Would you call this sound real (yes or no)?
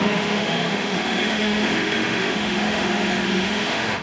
no